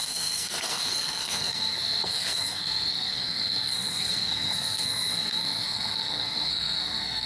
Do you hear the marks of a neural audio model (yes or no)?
yes